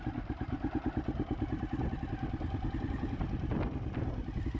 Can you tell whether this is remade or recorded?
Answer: recorded